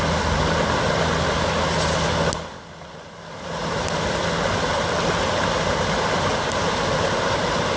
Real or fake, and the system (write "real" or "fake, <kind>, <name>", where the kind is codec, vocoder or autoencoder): real